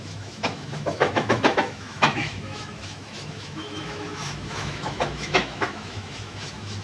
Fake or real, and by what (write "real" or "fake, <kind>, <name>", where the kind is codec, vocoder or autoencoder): fake, autoencoder, DAC-VAE